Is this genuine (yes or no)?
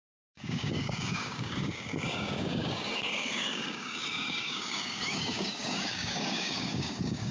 no